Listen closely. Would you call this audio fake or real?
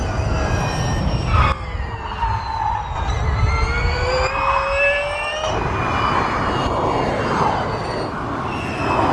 real